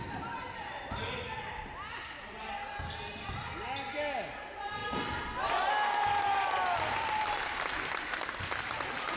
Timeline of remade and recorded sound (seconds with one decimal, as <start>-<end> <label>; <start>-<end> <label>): 0.0-9.2 recorded